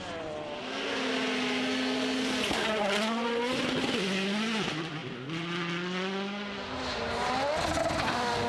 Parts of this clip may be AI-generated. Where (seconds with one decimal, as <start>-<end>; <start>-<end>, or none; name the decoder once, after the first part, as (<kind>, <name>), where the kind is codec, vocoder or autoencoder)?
none